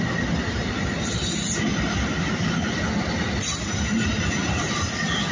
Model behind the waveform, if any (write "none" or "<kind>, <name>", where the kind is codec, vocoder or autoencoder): none